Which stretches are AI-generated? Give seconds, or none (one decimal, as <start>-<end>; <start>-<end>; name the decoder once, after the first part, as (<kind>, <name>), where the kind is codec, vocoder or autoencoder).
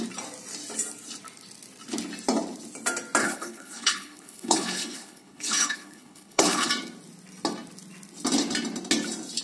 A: 3.2-6.7 (codec, HILCodec)